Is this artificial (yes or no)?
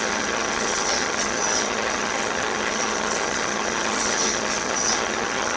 yes